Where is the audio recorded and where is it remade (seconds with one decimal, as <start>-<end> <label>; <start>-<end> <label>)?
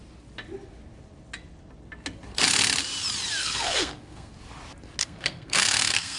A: 0.0-3.4 recorded; 3.4-4.3 remade; 4.3-5.0 recorded; 5.0-6.2 remade